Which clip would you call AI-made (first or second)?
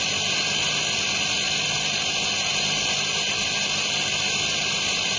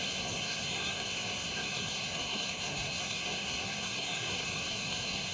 second